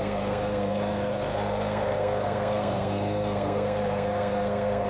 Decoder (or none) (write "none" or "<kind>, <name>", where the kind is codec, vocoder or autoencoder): codec, SNAC